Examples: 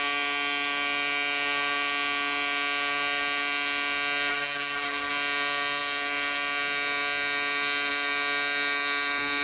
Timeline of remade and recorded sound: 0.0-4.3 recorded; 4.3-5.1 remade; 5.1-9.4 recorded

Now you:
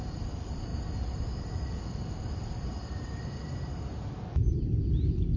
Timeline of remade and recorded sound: 0.0-5.4 recorded

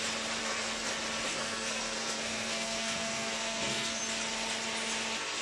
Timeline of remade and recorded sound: 0.0-0.4 recorded; 0.4-0.9 remade; 0.9-1.3 recorded; 1.3-4.0 remade; 4.0-5.4 recorded

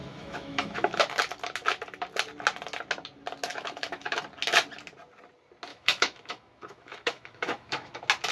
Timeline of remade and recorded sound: 0.0-1.0 remade; 1.0-3.5 recorded; 3.5-4.2 remade; 4.2-5.7 recorded; 5.7-7.9 remade; 7.9-8.3 recorded

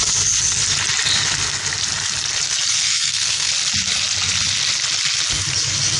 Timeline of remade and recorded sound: 0.0-2.7 recorded; 2.7-3.5 remade; 3.5-6.0 recorded

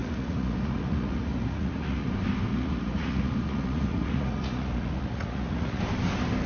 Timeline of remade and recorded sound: 0.0-2.1 remade; 2.1-2.5 recorded; 2.5-5.8 remade; 5.8-6.5 recorded